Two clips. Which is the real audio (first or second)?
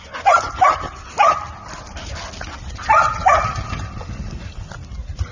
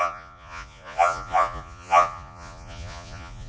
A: first